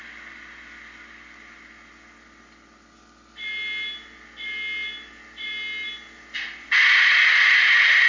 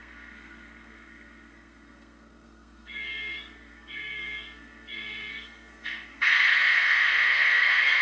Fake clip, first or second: second